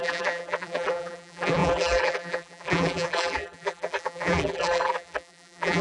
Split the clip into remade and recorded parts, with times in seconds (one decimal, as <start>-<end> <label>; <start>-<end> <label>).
0.0-5.8 remade